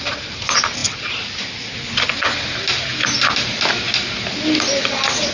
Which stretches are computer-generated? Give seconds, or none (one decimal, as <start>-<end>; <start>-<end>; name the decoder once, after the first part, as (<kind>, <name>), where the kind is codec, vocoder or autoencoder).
none